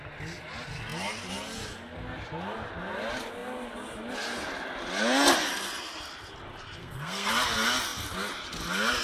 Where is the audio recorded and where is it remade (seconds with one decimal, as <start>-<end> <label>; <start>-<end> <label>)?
0.0-6.8 recorded; 6.8-7.3 remade; 7.3-9.0 recorded